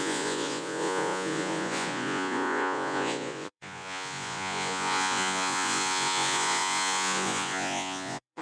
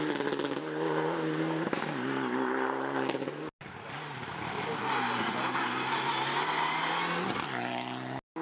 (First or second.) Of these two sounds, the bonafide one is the second